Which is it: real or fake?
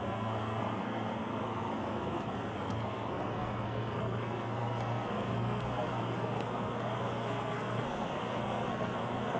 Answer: fake